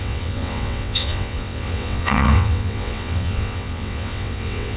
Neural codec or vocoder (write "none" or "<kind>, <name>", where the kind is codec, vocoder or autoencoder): vocoder, WaveNeXt